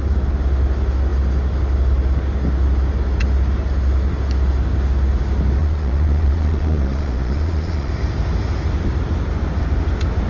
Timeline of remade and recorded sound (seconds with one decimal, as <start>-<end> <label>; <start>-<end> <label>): 0.0-5.6 recorded; 5.6-7.9 remade; 7.9-10.3 recorded